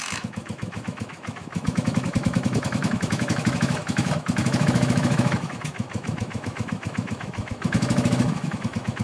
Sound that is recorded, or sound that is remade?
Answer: remade